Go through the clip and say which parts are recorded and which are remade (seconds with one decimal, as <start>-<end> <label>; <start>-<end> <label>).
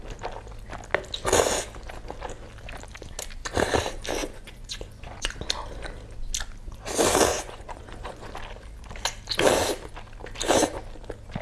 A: 0.0-4.2 recorded; 4.2-5.3 remade; 5.3-7.3 recorded; 7.3-8.3 remade; 8.3-11.4 recorded